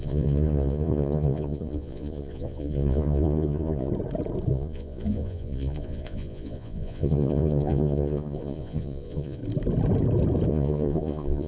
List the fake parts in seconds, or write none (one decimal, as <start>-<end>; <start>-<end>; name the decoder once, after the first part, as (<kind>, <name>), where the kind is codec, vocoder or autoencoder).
0.0-3.9 (vocoder, Vocos); 4.5-9.4; 10.5-11.5